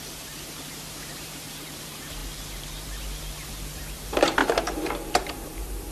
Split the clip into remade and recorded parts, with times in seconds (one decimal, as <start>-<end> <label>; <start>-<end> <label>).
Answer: 0.0-2.2 remade; 2.2-3.5 recorded; 3.5-5.9 remade